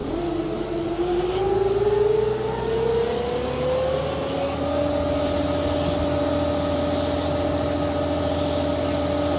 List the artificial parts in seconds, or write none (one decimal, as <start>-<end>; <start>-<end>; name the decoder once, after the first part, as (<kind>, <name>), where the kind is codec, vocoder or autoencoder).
none

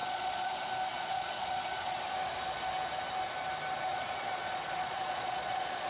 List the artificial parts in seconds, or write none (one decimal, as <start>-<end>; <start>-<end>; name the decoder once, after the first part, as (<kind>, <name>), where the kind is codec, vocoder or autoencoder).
0.0-0.5 (vocoder, Vocos); 0.9-2.0; 3.9-5.9

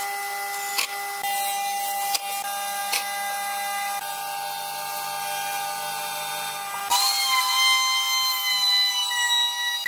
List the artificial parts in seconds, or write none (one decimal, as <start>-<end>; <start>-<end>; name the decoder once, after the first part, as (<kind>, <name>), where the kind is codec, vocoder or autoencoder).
none

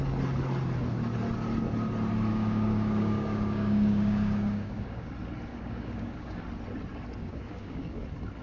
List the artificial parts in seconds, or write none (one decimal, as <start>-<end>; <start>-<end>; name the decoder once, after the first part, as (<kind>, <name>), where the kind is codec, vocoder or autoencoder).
2.3-5.1 (codec, DAC); 5.5-6.4; 7.2-8.0

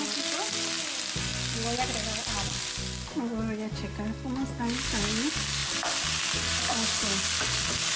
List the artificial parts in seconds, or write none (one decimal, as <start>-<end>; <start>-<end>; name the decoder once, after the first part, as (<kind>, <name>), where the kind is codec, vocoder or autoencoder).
none